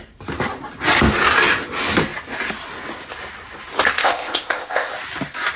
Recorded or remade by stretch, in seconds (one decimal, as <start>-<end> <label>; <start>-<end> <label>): 0.0-4.0 recorded; 4.0-4.9 remade; 4.9-5.6 recorded